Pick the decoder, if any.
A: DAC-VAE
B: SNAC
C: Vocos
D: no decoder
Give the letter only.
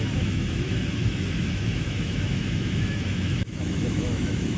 A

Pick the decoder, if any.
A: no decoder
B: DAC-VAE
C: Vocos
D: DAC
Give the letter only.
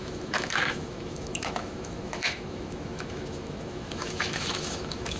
B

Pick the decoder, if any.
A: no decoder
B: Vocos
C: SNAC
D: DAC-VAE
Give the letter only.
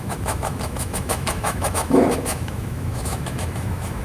D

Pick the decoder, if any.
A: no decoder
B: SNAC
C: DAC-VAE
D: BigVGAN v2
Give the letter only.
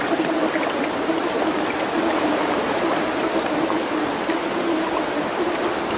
A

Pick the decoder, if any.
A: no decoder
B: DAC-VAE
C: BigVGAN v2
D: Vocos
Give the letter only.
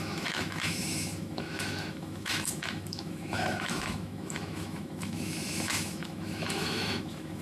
B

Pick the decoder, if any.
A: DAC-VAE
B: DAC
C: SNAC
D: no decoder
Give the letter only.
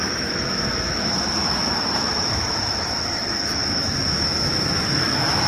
A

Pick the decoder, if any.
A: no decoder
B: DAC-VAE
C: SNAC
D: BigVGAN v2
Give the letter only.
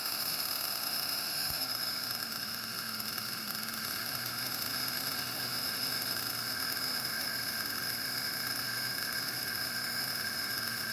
B